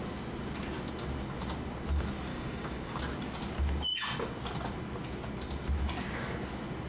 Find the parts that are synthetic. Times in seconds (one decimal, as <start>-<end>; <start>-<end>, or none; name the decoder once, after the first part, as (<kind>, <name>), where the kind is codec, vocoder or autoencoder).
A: 2.3-3.0 (codec, DAC)